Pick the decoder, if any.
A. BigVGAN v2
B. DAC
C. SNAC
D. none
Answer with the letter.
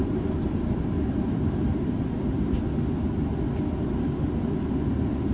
D